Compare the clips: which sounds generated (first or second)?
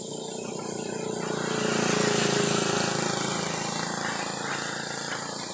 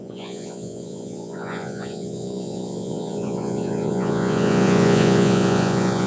second